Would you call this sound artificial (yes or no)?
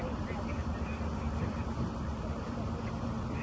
yes